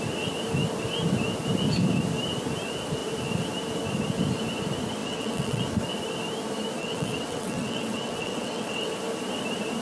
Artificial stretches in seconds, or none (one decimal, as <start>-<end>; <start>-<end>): 5.0-5.6; 6.8-8.9